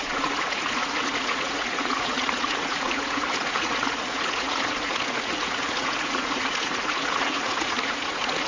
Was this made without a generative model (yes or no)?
no